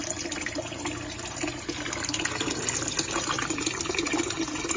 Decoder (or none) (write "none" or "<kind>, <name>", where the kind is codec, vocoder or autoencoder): none